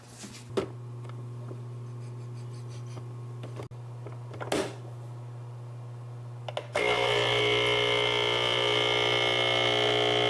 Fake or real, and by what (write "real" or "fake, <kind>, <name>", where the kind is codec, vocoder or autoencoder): real